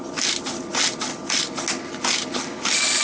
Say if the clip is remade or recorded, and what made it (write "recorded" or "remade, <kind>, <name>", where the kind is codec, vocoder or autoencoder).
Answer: recorded